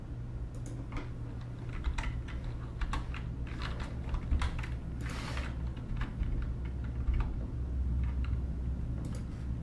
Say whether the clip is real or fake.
real